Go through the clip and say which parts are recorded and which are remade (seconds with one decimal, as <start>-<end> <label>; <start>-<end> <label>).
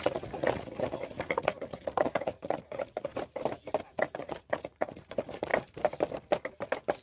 0.0-3.1 remade; 3.1-3.8 recorded; 3.8-5.5 remade; 5.5-7.0 recorded